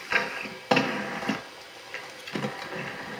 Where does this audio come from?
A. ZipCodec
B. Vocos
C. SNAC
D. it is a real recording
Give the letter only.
D